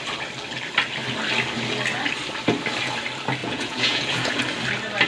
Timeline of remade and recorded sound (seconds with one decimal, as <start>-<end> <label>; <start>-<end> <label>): 0.0-3.4 recorded; 3.4-4.4 remade; 4.4-5.1 recorded